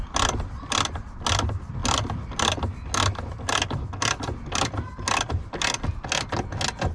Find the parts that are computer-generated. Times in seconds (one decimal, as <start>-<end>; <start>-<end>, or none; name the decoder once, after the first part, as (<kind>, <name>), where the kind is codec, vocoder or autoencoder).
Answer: none